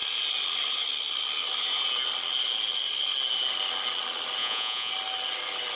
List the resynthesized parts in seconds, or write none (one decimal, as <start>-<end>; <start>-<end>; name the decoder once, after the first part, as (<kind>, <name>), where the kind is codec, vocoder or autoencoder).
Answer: 4.4-4.9 (vocoder, Vocos)